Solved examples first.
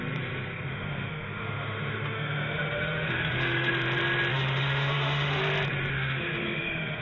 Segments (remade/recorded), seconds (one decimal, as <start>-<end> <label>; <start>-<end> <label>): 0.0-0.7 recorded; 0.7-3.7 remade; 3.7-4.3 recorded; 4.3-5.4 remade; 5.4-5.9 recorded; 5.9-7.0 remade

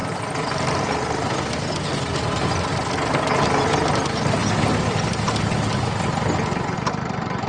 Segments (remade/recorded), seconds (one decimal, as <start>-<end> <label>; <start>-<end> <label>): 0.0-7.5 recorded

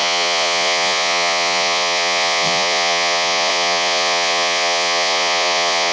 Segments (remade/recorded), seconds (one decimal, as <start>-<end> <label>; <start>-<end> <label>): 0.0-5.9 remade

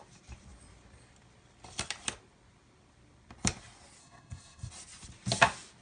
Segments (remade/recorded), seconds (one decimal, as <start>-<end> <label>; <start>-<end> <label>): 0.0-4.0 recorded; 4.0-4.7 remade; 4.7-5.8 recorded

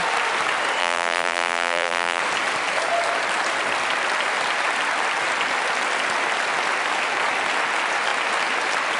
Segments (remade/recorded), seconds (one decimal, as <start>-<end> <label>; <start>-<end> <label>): 0.0-0.8 recorded; 0.8-2.2 remade; 2.2-9.0 recorded